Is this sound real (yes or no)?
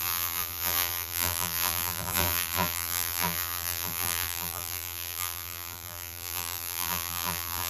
no